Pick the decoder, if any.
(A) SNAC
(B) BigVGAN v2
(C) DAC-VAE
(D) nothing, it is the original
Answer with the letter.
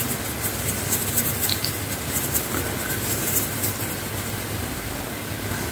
D